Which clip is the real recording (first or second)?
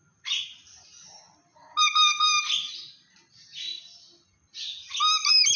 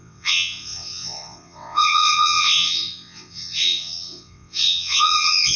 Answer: first